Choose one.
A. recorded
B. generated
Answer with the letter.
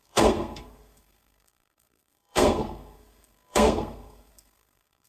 B